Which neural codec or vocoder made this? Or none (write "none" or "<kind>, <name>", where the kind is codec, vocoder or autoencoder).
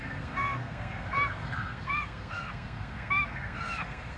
codec, SNAC